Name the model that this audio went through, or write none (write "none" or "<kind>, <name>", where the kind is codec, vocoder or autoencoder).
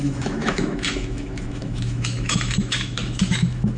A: autoencoder, DAC-VAE